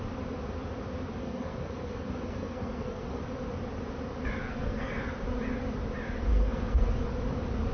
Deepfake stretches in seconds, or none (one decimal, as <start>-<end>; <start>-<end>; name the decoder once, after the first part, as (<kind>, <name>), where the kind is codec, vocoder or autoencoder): 1.2-3.2 (codec, SNAC); 4.4-4.9; 6.3-6.9